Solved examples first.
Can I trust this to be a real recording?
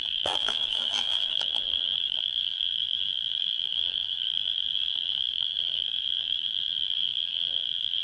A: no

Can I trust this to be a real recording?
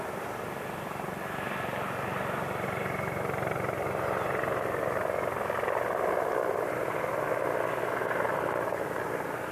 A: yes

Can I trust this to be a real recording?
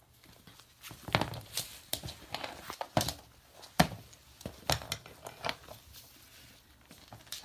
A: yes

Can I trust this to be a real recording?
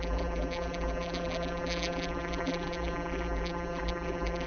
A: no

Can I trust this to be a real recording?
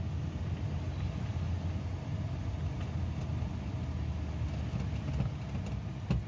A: yes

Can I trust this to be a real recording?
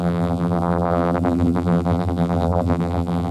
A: no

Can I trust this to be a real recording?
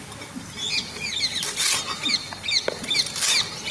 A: yes